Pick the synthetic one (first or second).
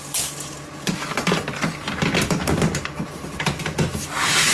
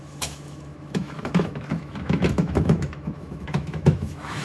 second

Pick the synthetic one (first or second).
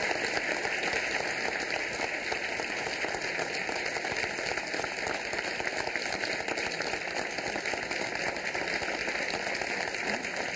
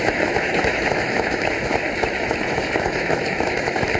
second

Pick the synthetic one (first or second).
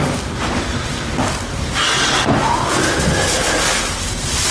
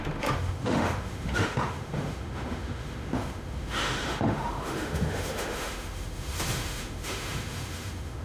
second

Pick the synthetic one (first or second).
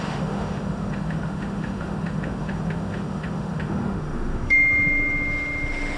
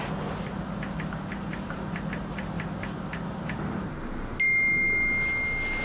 first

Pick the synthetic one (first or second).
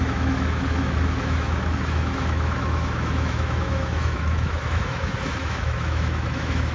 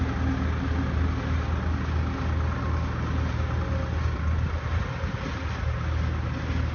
first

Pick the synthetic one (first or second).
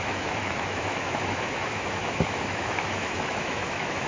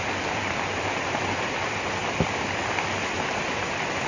first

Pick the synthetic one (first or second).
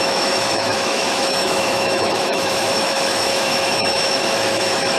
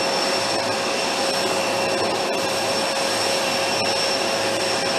first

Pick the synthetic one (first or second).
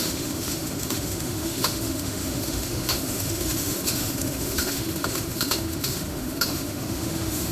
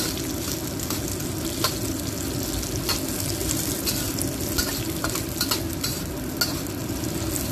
first